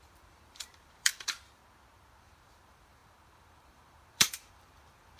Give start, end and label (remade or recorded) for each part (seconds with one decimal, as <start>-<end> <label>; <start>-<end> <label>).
0.0-1.6 remade; 1.6-2.2 recorded; 2.2-5.2 remade